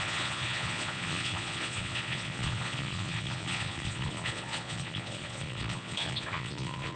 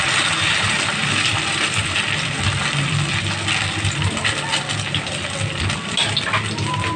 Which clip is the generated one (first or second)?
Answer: first